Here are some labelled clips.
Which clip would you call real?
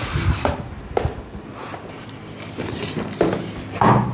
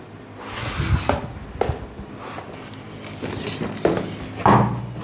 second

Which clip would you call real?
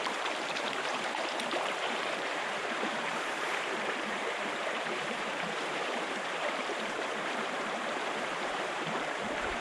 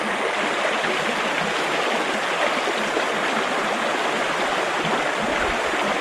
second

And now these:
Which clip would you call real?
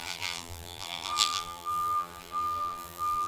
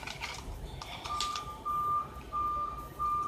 second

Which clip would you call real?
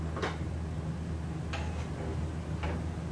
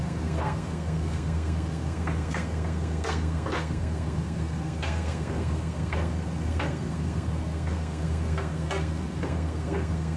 first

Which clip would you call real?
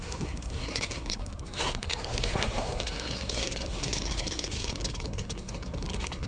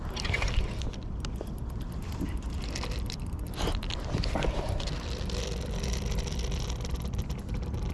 second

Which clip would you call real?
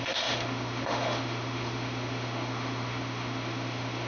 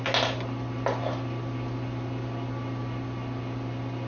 second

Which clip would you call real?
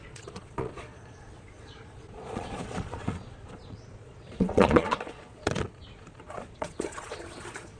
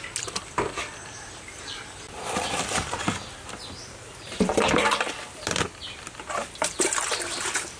second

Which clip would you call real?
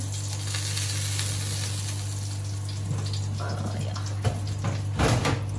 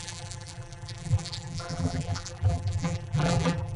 first